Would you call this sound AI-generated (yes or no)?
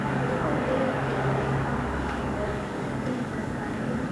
yes